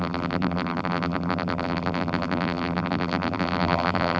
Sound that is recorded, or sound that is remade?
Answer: remade